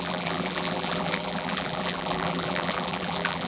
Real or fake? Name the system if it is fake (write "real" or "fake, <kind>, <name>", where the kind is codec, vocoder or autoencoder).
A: fake, vocoder, BigVGAN v2